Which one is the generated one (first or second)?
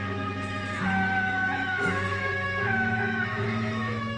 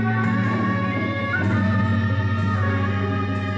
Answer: first